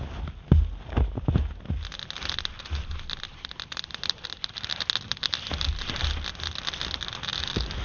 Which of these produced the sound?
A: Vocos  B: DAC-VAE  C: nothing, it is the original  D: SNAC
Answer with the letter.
C